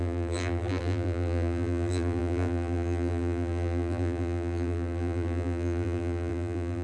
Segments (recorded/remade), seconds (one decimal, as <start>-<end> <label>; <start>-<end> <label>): 0.0-6.8 remade